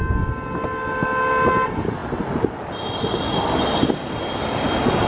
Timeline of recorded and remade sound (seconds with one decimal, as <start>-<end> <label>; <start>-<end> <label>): 0.0-5.1 recorded